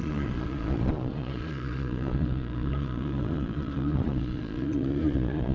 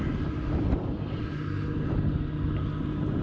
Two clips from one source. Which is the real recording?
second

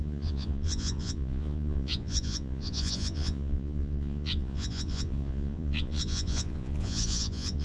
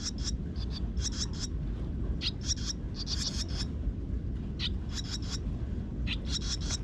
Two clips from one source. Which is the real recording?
second